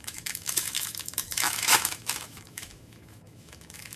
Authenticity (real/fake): fake